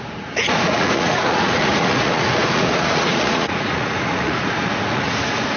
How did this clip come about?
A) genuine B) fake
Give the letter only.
B